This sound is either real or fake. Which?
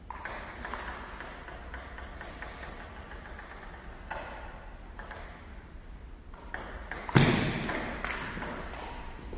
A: real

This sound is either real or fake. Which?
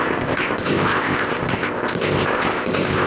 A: fake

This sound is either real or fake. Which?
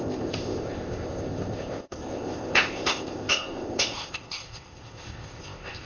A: fake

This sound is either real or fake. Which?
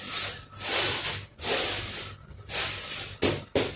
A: real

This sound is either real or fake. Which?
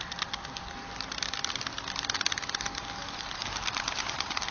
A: real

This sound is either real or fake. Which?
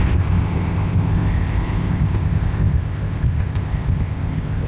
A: fake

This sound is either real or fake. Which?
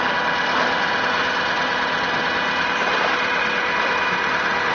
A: real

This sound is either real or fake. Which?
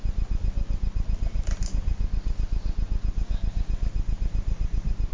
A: real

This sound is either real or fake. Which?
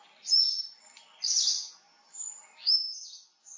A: real